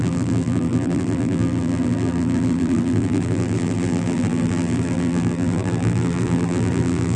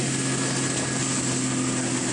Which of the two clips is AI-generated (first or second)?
first